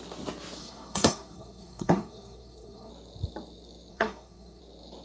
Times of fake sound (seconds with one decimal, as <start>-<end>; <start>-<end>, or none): 0.6-2.9; 3.9-4.6